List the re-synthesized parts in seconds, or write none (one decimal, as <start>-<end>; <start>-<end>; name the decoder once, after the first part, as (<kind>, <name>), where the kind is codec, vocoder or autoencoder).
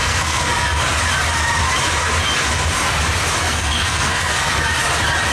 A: 0.0-0.8 (codec, SNAC); 3.4-4.7